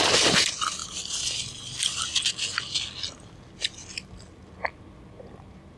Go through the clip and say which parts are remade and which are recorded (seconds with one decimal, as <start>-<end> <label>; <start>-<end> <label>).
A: 0.0-5.8 recorded